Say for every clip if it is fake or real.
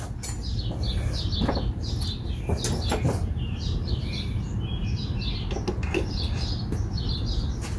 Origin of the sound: real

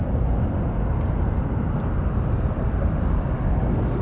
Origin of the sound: real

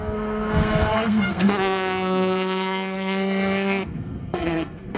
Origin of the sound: fake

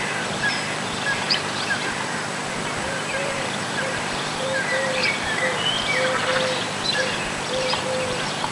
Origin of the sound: fake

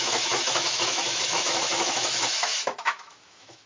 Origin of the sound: fake